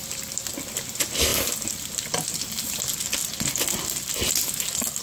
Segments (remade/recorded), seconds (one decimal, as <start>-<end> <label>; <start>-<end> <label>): 0.0-5.0 recorded